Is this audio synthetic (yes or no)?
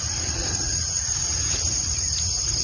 yes